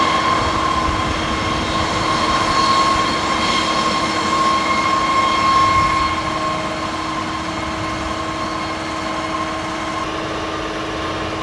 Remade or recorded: recorded